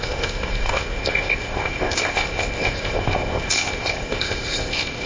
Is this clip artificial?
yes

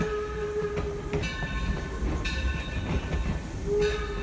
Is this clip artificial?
no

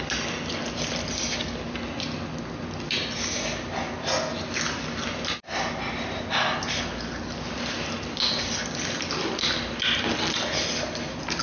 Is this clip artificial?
no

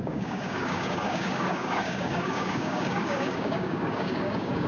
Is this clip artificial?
yes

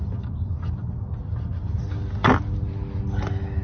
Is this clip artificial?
no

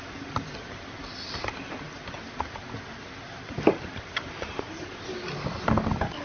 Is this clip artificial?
no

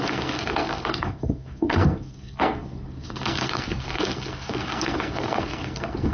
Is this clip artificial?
yes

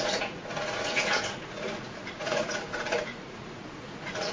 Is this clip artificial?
yes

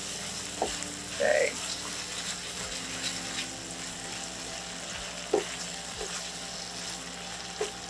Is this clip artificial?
no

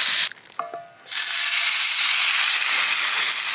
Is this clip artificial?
no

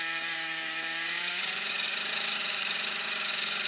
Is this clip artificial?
yes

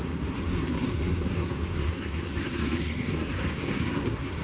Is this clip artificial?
yes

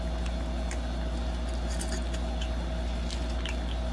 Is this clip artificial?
no